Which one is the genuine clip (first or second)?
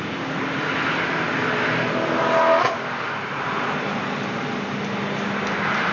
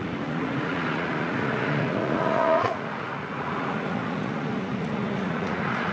first